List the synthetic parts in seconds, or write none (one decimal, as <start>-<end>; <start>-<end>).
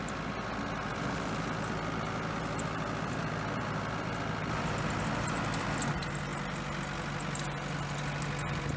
none